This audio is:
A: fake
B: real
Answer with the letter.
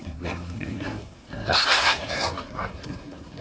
A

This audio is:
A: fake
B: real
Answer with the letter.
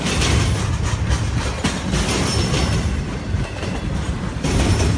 B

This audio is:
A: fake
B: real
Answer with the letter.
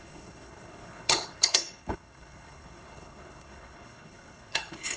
A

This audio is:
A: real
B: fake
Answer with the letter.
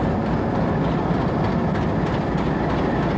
A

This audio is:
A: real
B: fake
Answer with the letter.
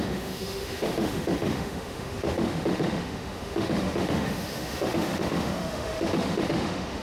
B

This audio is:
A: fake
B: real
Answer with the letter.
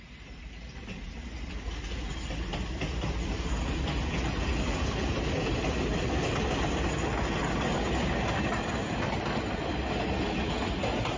B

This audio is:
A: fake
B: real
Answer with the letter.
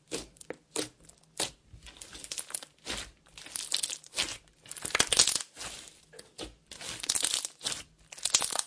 B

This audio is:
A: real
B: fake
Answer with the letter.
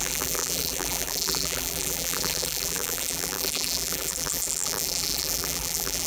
B